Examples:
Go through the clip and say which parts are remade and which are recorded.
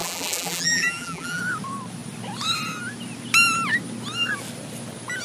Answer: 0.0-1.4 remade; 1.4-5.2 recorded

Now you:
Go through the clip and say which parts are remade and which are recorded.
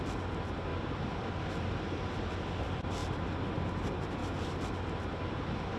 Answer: 0.0-0.7 recorded; 0.7-1.3 remade; 1.3-5.8 recorded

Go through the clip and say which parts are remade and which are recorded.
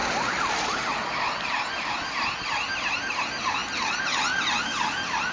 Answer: 0.0-5.3 recorded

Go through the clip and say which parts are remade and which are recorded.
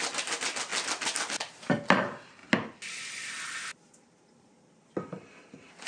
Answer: 0.0-5.9 recorded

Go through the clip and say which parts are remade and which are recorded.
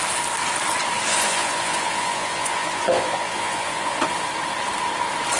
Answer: 0.0-1.1 recorded; 1.1-4.0 remade; 4.0-5.4 recorded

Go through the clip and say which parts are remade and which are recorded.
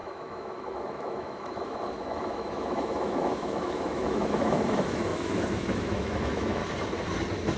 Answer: 0.0-6.6 remade; 6.6-7.6 recorded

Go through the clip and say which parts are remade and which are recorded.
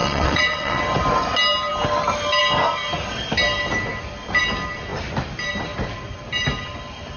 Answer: 0.0-0.8 remade; 0.8-7.2 recorded